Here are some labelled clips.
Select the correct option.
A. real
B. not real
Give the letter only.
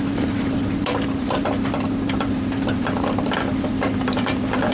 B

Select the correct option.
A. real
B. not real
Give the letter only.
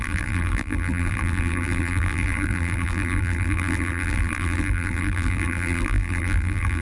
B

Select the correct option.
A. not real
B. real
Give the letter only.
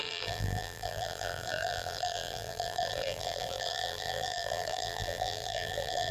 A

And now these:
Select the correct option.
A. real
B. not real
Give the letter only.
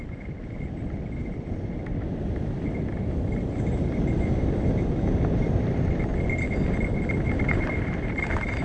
A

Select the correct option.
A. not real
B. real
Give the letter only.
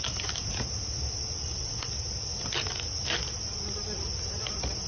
B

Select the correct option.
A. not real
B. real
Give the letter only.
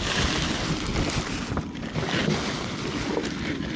B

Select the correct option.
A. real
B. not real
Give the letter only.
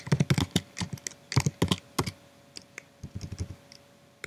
A